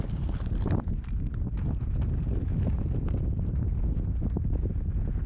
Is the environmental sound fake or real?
real